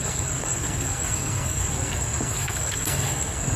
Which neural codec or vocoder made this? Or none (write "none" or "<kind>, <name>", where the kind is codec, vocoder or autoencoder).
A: codec, SNAC